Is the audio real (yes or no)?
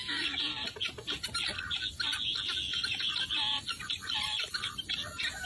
yes